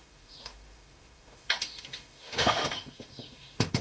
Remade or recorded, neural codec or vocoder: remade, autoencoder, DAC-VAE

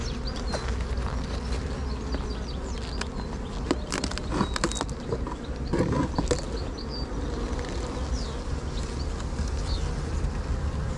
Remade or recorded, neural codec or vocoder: recorded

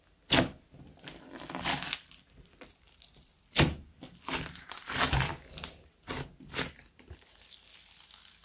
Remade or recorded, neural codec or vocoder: recorded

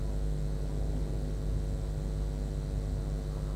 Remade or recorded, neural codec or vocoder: recorded